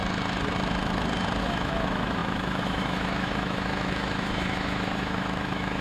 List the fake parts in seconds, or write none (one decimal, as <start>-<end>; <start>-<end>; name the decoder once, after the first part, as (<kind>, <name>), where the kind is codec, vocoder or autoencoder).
1.4-5.8 (autoencoder, DAC-VAE)